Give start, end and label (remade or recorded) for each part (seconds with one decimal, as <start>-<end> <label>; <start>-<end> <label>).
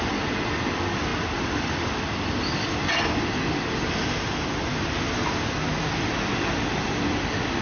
0.0-7.6 recorded